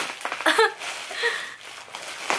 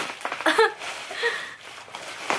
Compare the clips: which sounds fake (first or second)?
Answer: second